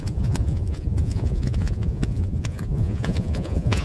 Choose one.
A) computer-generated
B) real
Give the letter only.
A